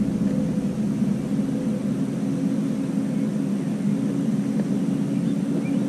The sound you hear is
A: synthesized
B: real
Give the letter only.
B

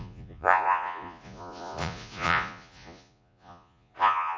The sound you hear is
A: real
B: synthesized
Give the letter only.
B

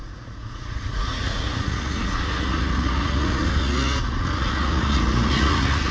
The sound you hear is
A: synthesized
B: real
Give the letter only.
A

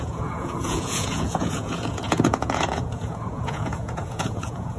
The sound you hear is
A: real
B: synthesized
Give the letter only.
B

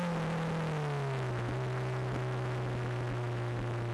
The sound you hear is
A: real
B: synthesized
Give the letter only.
A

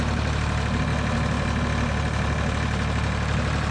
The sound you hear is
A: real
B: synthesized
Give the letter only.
A